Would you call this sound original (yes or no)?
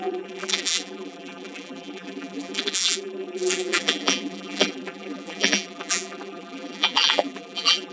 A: no